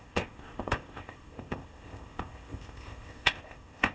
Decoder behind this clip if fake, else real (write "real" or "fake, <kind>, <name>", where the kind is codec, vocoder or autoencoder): fake, codec, ZipCodec